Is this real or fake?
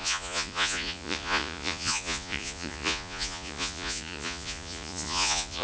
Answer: fake